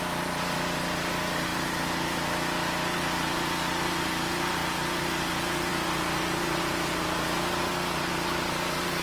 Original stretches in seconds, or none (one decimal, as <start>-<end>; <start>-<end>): 0.0-9.0